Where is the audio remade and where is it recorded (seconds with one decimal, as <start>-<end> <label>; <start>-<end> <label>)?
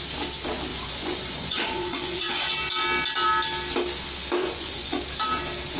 0.0-0.7 recorded; 0.7-2.3 remade; 2.3-4.4 recorded; 4.4-5.0 remade; 5.0-5.8 recorded